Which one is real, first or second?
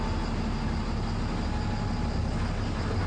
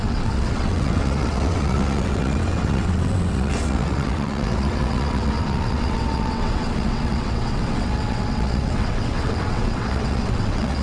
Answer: first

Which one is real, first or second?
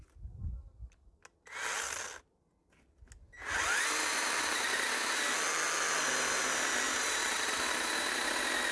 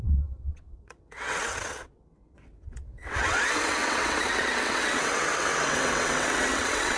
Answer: first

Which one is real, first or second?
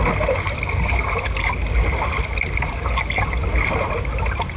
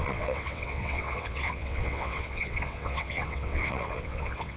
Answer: first